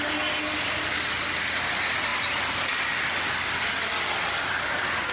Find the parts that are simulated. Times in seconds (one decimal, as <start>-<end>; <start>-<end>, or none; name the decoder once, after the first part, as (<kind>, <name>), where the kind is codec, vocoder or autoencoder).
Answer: none